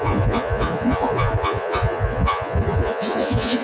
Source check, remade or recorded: remade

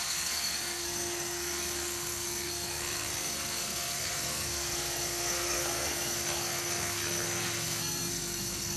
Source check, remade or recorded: remade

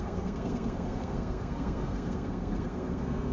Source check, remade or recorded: remade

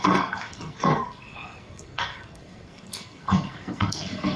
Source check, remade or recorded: remade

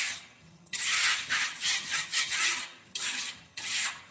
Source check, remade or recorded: remade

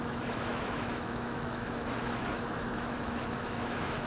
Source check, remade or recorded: remade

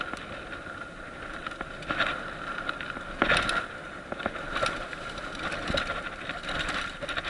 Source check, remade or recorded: recorded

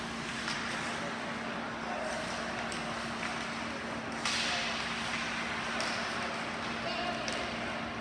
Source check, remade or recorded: recorded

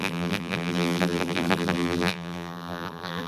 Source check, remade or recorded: remade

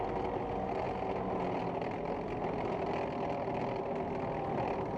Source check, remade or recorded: recorded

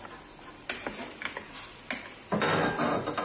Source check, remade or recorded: recorded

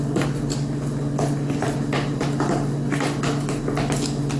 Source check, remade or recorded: recorded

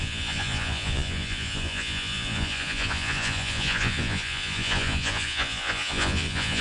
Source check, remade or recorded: remade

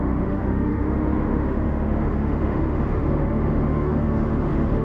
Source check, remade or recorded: remade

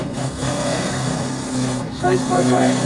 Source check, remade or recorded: remade